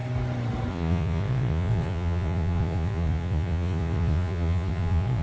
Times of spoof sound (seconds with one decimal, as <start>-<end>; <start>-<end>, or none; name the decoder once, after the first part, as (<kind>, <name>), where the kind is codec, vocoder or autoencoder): 0.7-5.2 (vocoder, Vocos)